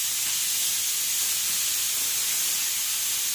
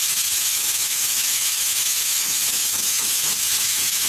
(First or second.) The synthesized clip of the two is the second